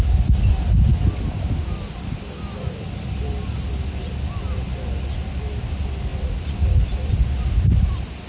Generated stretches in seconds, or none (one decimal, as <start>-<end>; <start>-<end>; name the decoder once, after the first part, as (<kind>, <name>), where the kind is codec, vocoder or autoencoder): none

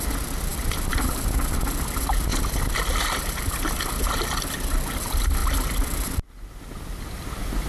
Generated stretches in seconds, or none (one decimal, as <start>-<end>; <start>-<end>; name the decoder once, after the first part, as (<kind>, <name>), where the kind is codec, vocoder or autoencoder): none

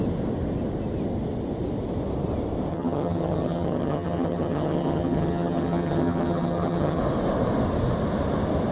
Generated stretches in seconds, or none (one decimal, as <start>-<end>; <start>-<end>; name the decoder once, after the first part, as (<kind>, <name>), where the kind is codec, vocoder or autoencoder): 2.7-7.0 (vocoder, HiFi-GAN)

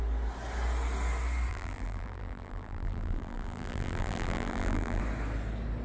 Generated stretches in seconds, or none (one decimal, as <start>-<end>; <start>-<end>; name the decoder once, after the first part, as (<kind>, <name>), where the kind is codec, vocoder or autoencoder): 1.5-5.0 (vocoder, BigVGAN v2)

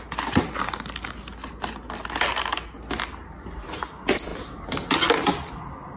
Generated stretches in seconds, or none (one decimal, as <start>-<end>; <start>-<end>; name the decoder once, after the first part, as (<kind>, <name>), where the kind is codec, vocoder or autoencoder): none

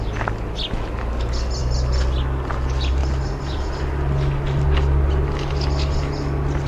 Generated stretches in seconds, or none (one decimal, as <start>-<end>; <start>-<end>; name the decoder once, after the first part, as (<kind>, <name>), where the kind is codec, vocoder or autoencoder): none

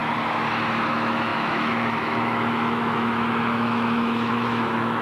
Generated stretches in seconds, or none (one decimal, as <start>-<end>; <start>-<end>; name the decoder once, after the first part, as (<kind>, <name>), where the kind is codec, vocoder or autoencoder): 0.9-5.0 (autoencoder, DAC-VAE)

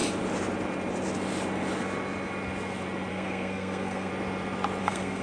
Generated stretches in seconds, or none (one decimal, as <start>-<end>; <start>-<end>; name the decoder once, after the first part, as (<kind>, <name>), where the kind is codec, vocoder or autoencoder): 3.1-4.1 (codec, SNAC); 4.8-5.2